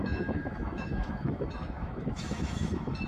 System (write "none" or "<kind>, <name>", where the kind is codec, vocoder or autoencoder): autoencoder, DAC-VAE